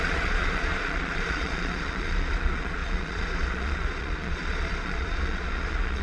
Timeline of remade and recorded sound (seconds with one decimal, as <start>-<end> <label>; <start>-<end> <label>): 0.0-6.0 remade